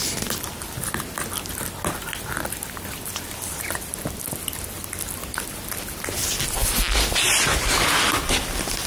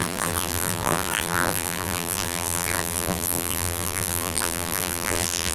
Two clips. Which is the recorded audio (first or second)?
first